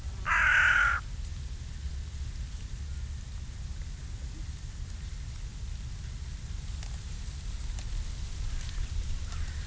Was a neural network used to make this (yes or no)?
no